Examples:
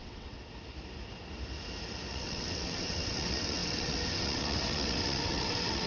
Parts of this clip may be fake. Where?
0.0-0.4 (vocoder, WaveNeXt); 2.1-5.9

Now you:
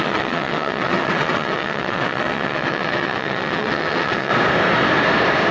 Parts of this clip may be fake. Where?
0.0-4.3 (vocoder, WaveNeXt)